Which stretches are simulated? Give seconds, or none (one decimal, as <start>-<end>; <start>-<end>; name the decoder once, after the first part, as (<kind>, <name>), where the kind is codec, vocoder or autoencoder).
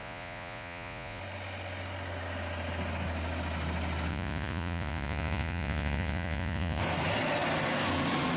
0.0-1.2 (vocoder, Vocos); 4.1-6.8